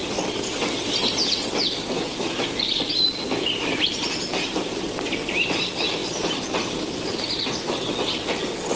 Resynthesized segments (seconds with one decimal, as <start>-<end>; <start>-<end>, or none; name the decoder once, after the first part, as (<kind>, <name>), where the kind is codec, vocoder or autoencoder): none